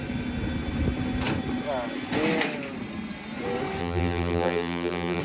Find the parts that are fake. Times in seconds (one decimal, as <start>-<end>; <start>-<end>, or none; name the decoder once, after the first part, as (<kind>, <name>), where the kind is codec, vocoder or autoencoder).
3.8-5.2 (vocoder, BigVGAN v2)